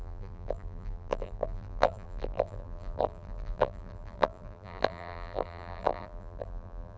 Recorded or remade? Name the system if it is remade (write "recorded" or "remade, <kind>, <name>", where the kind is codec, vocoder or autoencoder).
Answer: remade, vocoder, BigVGAN v2